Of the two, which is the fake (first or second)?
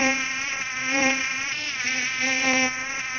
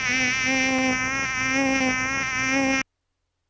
first